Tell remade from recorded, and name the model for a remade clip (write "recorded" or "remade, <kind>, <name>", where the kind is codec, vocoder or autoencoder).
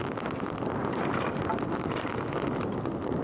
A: recorded